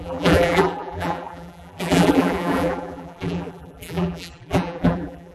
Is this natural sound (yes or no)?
no